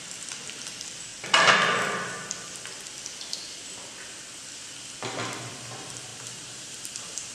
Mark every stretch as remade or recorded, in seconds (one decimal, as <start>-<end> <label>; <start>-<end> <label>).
0.0-1.1 remade; 1.1-5.5 recorded; 5.5-7.3 remade